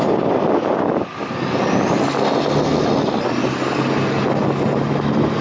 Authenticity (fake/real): real